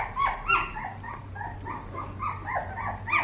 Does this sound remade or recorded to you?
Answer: recorded